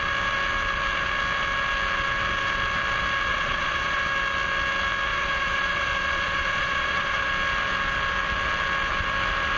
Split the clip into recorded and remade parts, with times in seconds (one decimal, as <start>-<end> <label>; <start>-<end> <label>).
0.0-3.3 recorded; 3.3-4.0 remade; 4.0-5.1 recorded; 5.1-7.2 remade; 7.2-9.6 recorded